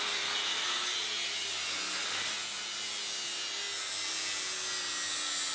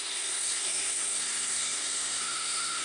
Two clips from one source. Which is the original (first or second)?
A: first